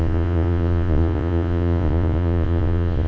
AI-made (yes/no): yes